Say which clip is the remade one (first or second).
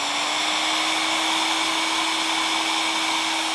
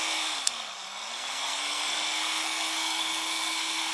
second